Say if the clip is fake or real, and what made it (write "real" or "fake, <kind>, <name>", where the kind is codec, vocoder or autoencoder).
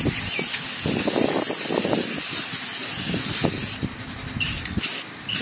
real